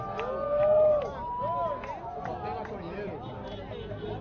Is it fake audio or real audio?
real